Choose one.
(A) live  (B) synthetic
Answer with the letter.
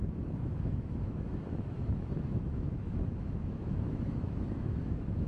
B